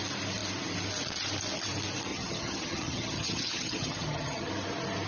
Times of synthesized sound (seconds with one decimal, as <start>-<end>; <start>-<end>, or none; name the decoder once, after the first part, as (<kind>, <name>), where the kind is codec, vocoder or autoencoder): 2.1-4.5 (vocoder, HiFi-GAN)